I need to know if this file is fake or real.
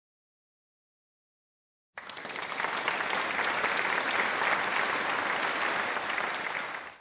fake